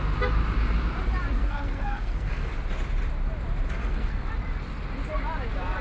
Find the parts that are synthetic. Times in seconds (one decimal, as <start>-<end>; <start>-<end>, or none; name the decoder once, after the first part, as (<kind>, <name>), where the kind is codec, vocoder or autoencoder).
1.4-2.5 (codec, SNAC); 3.8-4.3